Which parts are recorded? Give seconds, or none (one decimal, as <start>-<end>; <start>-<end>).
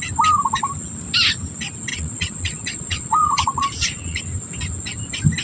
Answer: 0.0-1.9; 4.2-5.4